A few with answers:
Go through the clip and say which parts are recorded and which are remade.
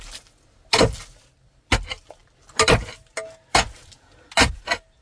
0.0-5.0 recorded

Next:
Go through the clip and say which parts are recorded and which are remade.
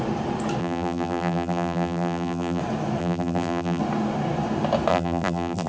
0.0-0.6 recorded; 0.6-2.6 remade; 2.6-3.0 recorded; 3.0-3.8 remade; 3.8-4.9 recorded; 4.9-5.7 remade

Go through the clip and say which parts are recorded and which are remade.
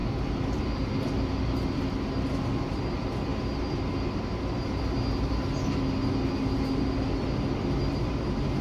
0.0-0.6 remade; 0.6-8.6 recorded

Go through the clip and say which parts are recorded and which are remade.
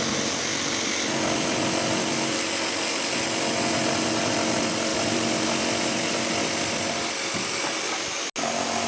0.0-4.9 recorded; 4.9-7.6 remade; 7.6-8.9 recorded